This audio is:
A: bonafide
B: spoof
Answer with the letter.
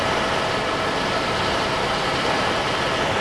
A